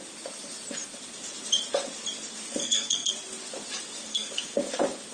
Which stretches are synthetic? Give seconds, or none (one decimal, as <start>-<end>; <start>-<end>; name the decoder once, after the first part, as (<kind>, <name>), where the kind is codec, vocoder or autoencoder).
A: 2.6-3.1 (codec, SNAC); 4.1-4.6